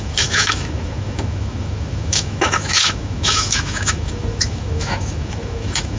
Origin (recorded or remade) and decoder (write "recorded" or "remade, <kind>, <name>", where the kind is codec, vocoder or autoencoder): remade, autoencoder, DAC-VAE